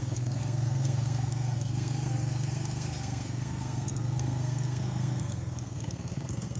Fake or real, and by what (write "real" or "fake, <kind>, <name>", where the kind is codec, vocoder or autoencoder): fake, codec, SNAC